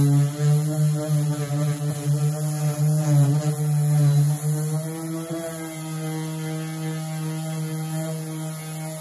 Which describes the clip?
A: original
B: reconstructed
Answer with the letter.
A